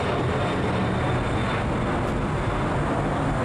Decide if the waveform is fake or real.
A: real